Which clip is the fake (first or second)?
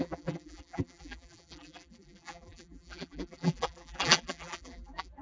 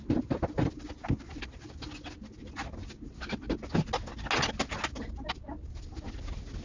first